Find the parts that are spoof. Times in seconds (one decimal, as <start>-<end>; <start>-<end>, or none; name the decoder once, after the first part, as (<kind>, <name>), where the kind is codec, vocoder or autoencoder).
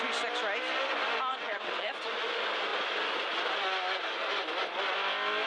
1.3-1.9 (vocoder, WaveNeXt)